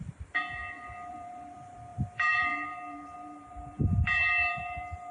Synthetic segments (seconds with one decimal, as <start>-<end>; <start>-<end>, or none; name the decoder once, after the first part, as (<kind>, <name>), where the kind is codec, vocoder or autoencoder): 0.0-0.6 (vocoder, BigVGAN v2); 1.1-5.1